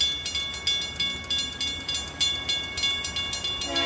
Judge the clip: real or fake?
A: real